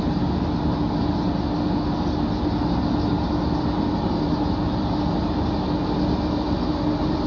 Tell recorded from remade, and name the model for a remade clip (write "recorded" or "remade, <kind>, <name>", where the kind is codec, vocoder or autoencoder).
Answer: recorded